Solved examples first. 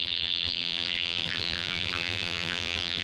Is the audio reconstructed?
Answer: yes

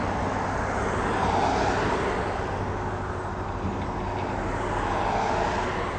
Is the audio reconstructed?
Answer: no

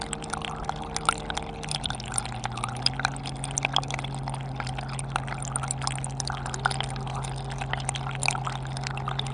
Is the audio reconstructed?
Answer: no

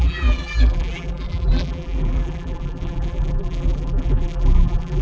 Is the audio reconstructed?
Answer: yes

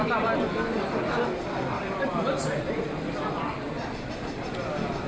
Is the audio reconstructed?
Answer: no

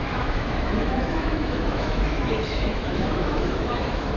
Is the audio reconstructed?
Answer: yes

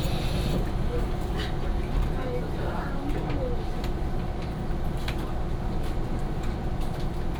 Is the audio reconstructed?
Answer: no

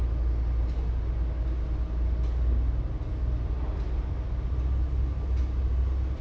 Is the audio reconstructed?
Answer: no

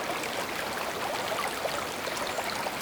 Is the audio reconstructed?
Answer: no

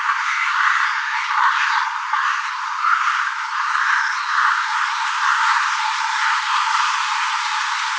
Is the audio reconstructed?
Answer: yes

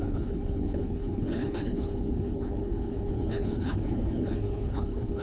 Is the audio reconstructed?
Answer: yes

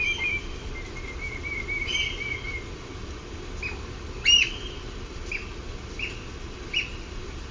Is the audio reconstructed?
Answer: no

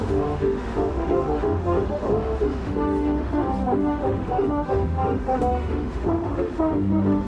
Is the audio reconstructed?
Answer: yes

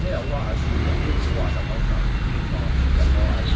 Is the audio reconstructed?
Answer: no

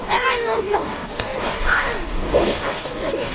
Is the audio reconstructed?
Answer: yes